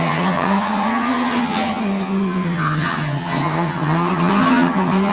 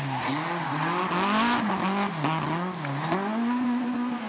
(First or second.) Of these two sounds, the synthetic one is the first